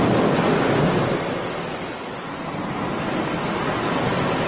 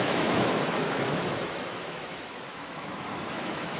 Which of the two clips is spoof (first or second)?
second